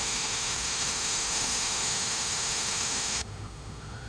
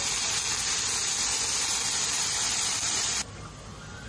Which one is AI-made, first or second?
first